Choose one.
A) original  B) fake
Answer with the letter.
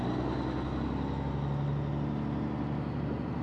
A